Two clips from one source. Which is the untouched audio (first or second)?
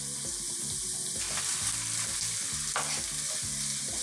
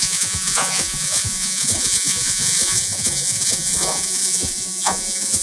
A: first